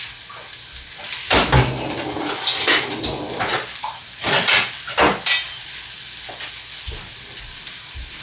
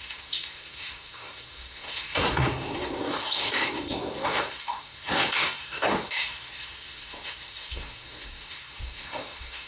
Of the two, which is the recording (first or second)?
first